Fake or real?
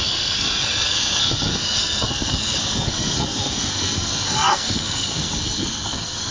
fake